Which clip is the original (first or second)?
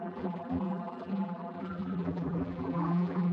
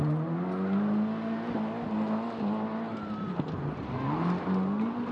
second